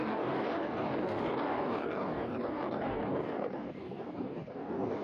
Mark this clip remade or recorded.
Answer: remade